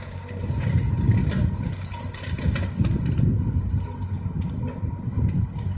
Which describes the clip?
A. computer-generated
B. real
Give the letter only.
B